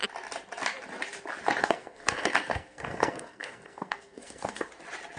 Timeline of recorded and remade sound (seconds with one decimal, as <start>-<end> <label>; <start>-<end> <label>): 0.0-1.6 recorded; 1.6-4.7 remade; 4.7-5.2 recorded